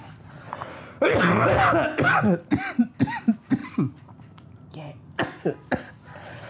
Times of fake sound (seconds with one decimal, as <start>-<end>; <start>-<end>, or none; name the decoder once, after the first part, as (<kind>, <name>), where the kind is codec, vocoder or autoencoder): 2.1-2.8 (vocoder, BigVGAN v2); 3.6-5.9